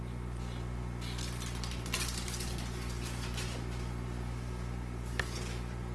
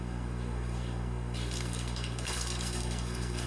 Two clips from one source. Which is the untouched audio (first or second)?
first